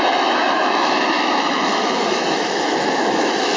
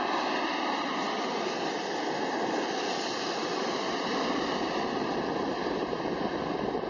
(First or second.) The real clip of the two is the second